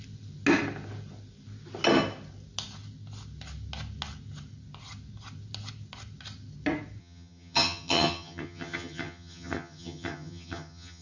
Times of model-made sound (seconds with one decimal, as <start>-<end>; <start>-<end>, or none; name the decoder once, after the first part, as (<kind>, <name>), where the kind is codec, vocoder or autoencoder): 7.0-11.0 (vocoder, HiFi-GAN)